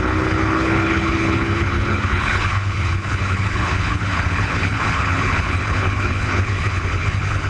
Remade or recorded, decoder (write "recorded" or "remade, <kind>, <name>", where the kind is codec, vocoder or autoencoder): remade, codec, HILCodec